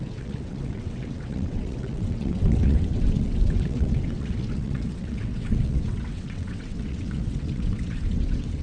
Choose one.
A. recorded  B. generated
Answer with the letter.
B